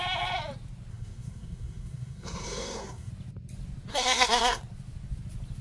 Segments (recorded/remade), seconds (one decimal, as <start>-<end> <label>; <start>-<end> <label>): 0.0-0.9 recorded; 0.9-3.1 remade; 3.1-3.9 recorded; 3.9-4.6 remade; 4.6-5.6 recorded

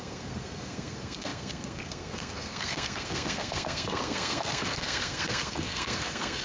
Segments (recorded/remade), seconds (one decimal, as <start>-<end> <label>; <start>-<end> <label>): 0.0-6.4 remade

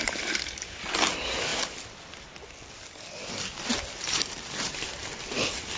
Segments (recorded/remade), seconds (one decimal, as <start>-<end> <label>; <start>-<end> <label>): 0.0-5.8 recorded

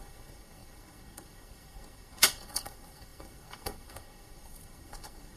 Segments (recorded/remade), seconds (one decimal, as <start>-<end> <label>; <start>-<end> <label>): 0.0-5.4 remade

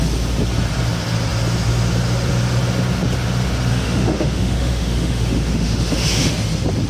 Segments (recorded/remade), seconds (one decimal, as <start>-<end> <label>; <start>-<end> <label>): 0.0-3.7 recorded; 3.7-6.3 remade; 6.3-6.9 recorded

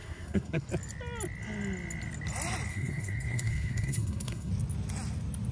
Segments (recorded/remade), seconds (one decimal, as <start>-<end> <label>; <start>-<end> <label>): 0.0-0.7 remade; 0.7-2.7 recorded; 2.7-4.5 remade; 4.5-5.5 recorded